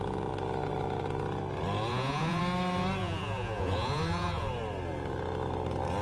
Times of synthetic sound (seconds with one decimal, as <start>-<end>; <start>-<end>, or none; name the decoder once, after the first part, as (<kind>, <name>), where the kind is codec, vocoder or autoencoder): 1.9-2.4 (vocoder, Vocos); 3.0-4.5